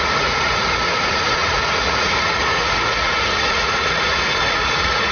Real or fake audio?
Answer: fake